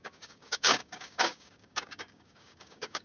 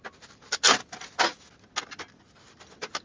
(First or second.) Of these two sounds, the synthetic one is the first